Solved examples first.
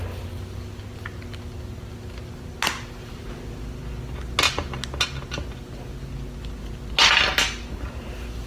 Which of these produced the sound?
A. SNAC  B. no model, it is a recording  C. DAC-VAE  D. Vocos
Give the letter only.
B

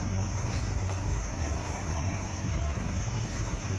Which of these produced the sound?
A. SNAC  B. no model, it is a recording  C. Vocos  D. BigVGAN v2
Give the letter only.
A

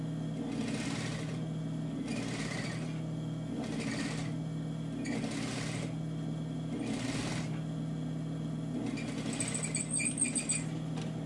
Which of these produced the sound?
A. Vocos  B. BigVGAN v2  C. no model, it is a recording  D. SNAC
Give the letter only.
C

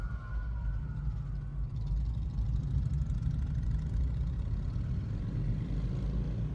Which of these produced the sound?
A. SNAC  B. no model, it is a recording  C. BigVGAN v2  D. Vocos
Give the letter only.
B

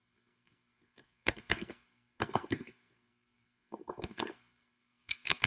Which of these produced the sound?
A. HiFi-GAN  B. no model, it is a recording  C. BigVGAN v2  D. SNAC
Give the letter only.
D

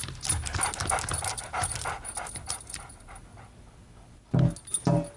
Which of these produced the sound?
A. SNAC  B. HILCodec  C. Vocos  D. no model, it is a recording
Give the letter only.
D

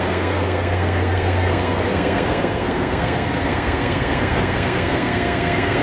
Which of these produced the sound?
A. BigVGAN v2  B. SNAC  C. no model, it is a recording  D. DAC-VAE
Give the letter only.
B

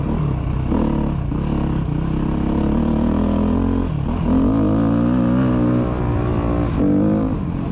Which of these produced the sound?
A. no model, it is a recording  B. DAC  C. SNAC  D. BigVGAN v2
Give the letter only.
A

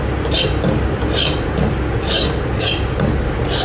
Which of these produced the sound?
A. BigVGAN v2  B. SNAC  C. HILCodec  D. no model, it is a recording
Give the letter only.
D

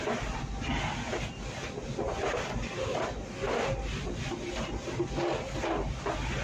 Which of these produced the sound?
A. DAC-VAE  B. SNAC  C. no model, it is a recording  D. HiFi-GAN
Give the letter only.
C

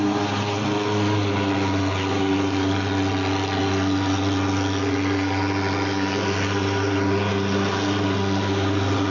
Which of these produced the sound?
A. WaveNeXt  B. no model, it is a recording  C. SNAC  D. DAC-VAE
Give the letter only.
B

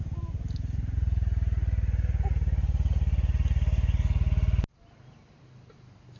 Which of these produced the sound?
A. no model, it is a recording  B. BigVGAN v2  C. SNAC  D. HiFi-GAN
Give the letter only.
A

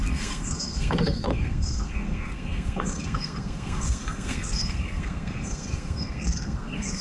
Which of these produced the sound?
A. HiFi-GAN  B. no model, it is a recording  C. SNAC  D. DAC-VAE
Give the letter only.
C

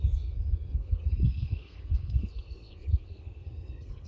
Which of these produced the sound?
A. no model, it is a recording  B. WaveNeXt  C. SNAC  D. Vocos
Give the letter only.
C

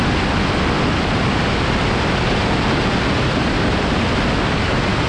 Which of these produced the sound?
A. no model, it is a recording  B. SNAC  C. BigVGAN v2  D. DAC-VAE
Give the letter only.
A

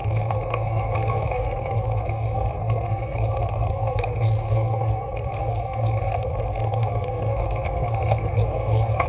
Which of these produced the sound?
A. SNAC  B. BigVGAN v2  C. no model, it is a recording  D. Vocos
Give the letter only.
A